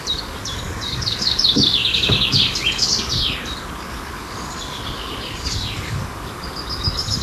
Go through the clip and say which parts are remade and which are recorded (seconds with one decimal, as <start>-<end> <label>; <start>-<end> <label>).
0.0-7.2 remade